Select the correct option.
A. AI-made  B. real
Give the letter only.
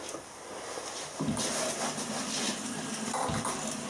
B